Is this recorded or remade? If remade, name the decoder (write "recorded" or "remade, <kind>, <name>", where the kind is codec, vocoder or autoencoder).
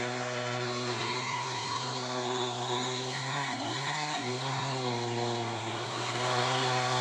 remade, codec, SNAC